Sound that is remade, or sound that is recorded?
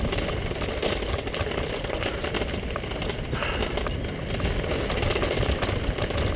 recorded